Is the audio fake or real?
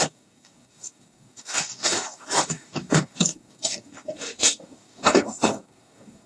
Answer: fake